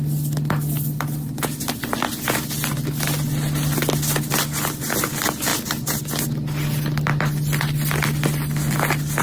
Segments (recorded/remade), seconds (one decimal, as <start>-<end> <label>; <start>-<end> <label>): 0.0-9.2 recorded